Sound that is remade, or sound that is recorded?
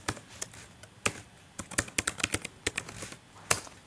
recorded